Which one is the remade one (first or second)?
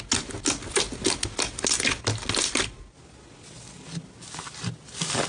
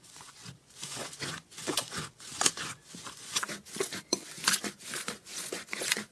second